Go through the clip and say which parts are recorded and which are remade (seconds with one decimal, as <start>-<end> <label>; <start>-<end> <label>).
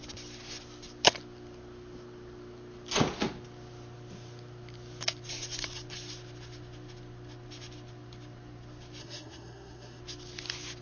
0.0-9.0 recorded; 9.0-10.0 remade; 10.0-10.8 recorded